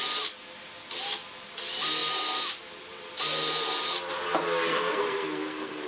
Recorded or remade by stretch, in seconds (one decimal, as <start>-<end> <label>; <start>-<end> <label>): 0.0-4.7 recorded; 4.7-5.9 remade